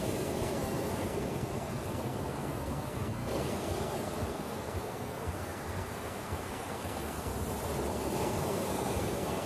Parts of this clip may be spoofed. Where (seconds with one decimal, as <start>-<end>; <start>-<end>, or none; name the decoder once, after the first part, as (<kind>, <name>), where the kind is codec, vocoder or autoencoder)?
0.0-7.3 (codec, SNAC); 7.9-9.5